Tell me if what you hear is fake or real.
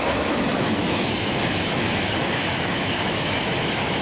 fake